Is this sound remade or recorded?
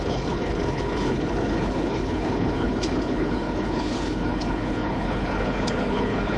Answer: remade